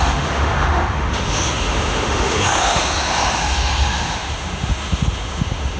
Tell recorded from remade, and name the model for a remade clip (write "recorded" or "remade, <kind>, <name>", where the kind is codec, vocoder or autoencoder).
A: remade, autoencoder, DAC-VAE